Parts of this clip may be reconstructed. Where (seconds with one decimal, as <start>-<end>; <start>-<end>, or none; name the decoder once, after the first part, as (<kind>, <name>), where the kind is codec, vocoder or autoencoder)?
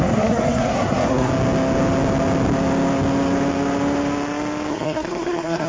0.0-1.3 (codec, SNAC); 4.7-5.7